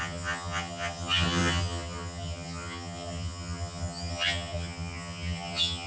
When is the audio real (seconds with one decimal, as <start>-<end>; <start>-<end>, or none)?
none